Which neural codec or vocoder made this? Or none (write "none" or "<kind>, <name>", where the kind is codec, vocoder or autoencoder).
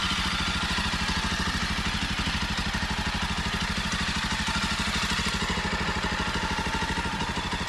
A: none